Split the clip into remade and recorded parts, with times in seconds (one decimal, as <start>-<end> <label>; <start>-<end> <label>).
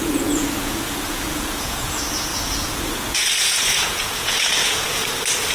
0.0-5.0 remade; 5.0-5.5 recorded